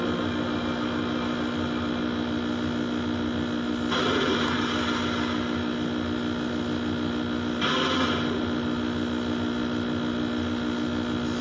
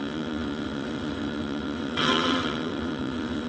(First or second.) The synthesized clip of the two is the second